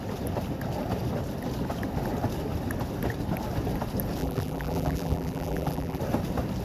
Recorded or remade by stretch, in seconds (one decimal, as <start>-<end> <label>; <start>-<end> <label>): 0.0-4.2 recorded; 4.2-6.0 remade; 6.0-6.6 recorded